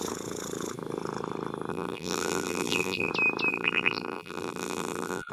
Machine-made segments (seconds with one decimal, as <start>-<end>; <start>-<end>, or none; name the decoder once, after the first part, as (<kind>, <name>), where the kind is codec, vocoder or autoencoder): 1.7-3.1 (vocoder, BigVGAN v2); 3.5-5.3